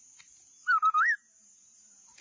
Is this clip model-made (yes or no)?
no